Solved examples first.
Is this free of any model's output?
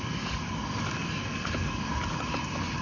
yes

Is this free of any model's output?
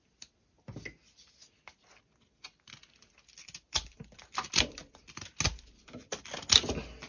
yes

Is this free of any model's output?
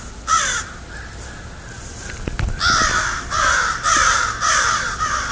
yes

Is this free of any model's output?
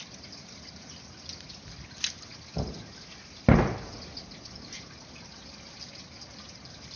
yes